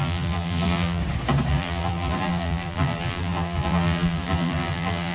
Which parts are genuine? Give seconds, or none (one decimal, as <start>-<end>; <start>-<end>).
1.0-1.5